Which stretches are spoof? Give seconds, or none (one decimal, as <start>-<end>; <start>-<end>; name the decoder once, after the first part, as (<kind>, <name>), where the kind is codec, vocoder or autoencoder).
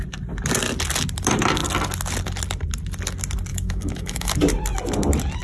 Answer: 3.5-4.3 (autoencoder, DAC-VAE)